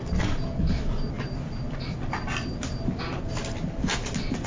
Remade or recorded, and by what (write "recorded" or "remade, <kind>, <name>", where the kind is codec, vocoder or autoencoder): recorded